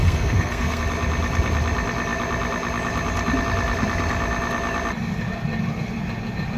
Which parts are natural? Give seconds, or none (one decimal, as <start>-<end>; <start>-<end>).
0.8-6.6